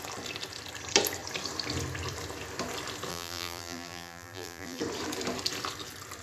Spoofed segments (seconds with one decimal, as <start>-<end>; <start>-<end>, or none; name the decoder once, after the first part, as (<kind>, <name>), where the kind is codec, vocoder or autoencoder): 3.1-4.8 (vocoder, BigVGAN v2)